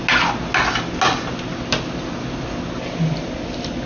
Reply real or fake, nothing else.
real